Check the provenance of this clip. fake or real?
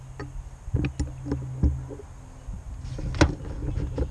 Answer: real